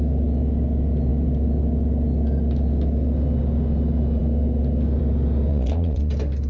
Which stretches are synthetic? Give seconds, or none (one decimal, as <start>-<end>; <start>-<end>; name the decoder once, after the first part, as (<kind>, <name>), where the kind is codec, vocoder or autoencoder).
5.5-6.1 (vocoder, Vocos)